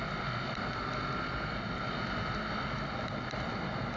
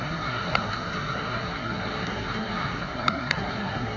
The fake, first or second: second